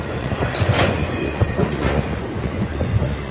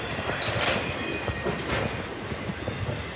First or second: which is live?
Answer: second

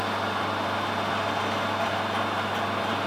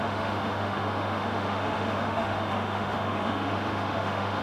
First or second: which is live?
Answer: first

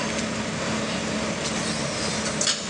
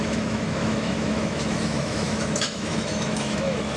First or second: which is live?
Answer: first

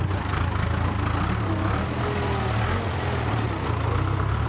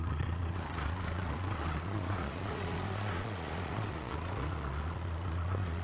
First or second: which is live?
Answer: first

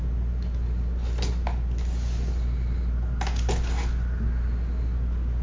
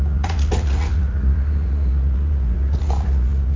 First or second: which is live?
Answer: first